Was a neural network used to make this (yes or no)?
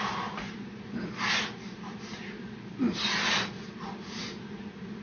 no